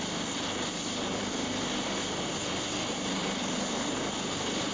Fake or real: fake